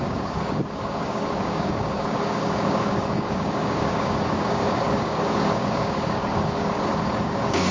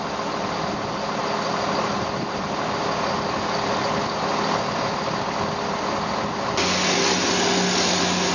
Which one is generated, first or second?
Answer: first